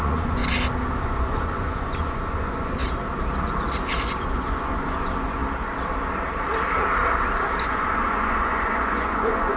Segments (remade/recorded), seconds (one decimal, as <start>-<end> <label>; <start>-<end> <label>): 0.0-0.4 remade; 0.4-1.0 recorded; 1.0-2.8 remade; 2.8-4.1 recorded; 4.1-5.4 remade; 5.4-7.6 recorded; 7.6-9.6 remade